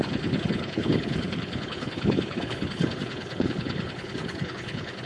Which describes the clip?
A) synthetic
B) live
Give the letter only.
A